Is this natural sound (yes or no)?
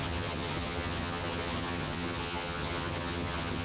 no